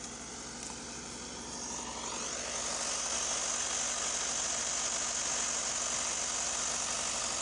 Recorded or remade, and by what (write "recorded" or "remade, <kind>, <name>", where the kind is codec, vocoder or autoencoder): recorded